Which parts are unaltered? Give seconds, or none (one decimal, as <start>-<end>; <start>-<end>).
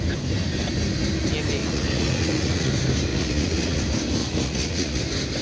0.0-1.6; 2.7-3.1; 3.8-4.2; 5.0-5.4